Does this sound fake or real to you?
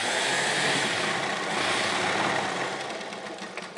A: real